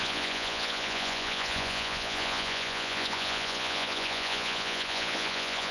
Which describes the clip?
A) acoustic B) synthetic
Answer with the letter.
B